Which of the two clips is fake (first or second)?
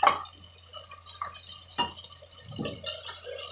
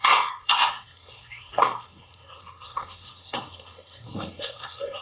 second